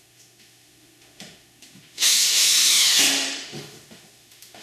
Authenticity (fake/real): fake